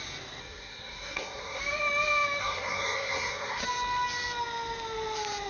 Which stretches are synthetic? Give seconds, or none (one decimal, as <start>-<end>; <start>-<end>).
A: 0.4-1.6; 2.4-3.6